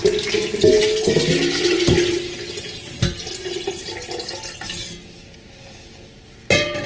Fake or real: real